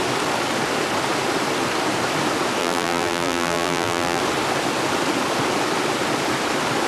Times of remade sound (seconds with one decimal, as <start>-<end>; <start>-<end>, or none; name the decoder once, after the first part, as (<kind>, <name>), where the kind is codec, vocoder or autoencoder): 2.6-4.2 (vocoder, BigVGAN v2)